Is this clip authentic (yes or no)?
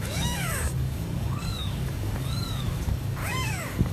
no